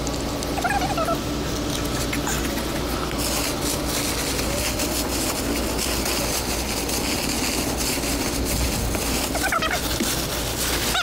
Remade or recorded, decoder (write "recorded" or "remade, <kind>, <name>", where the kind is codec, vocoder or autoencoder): recorded